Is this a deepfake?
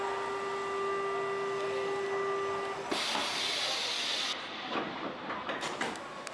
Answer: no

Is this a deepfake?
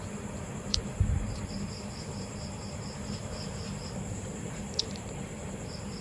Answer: yes